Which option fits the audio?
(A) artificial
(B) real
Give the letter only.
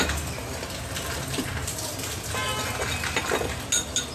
B